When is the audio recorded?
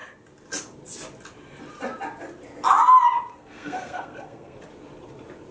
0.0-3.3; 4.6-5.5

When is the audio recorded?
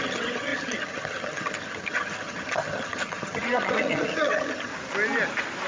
4.7-5.7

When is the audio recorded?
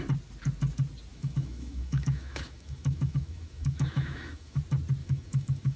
0.0-1.1; 4.6-5.0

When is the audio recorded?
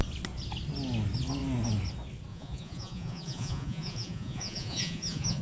0.0-2.3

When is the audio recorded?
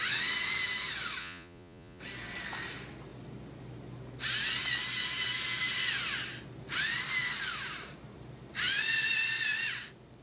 0.0-1.2; 2.0-10.2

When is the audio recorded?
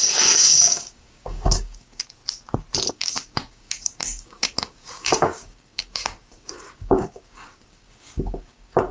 2.2-2.9